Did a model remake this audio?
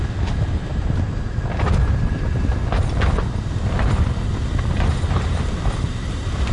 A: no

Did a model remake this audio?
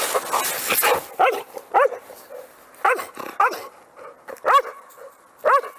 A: no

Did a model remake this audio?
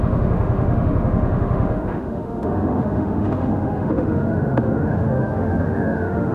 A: yes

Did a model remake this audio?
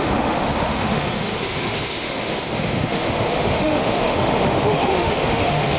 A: yes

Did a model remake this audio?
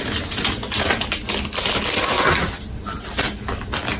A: no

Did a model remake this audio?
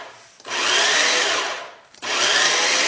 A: no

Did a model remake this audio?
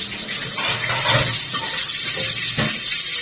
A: no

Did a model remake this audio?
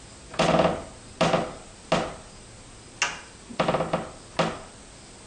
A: no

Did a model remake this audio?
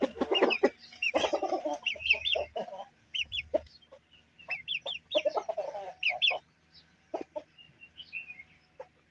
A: no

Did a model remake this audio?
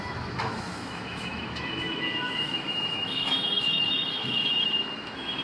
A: yes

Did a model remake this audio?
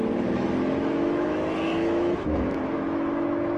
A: yes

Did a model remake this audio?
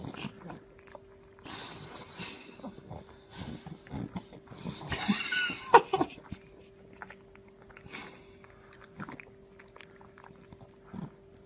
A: no